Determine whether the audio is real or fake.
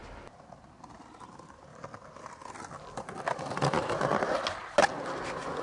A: real